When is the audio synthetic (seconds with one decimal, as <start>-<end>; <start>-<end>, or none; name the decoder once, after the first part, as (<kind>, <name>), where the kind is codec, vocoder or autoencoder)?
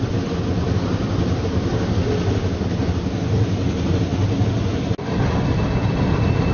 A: none